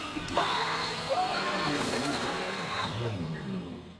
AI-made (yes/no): yes